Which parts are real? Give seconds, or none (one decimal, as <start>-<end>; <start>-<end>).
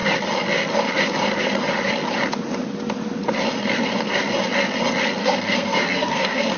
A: 0.0-5.2